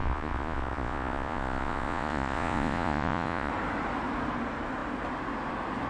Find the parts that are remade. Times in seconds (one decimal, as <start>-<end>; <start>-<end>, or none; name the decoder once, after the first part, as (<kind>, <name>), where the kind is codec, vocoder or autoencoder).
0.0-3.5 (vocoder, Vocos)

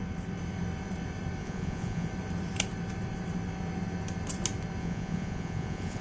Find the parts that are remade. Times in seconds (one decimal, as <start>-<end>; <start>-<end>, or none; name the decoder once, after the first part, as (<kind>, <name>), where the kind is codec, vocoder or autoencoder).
1.4-2.1 (vocoder, Vocos); 4.8-6.0

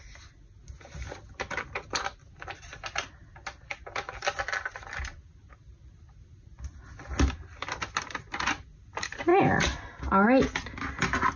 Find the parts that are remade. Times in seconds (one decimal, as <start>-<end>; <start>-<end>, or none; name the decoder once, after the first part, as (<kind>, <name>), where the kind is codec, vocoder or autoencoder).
none

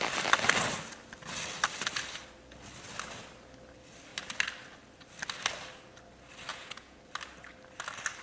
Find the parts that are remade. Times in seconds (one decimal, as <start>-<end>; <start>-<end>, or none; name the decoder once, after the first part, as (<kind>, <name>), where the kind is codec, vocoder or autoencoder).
6.5-7.0 (vocoder, Vocos)

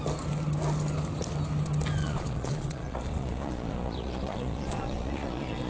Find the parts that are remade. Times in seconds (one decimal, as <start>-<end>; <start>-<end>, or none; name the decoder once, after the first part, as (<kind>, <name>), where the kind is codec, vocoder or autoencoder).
2.0-5.7 (vocoder, Vocos)

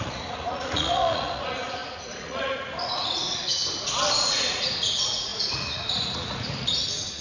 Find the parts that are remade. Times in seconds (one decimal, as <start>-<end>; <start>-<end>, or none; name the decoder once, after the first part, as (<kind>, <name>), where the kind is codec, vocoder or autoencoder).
0.0-3.6 (vocoder, Vocos); 4.2-7.2

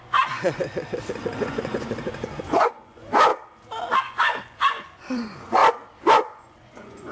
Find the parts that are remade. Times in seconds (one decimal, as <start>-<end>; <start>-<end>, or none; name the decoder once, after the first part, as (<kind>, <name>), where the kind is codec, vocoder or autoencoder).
0.0-0.7 (vocoder, Vocos); 1.4-3.3; 4.0-5.6; 6.1-7.1

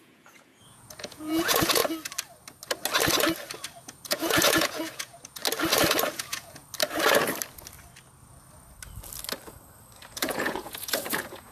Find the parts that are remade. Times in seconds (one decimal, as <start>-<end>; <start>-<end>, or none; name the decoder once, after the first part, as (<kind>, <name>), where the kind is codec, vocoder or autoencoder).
0.0-1.8 (vocoder, Vocos); 3.8-5.4; 6.1-6.6; 10.0-11.5